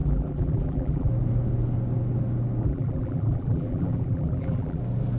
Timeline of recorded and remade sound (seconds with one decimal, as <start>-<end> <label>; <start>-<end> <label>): 0.0-1.1 remade; 1.1-2.6 recorded; 2.6-4.8 remade; 4.8-5.2 recorded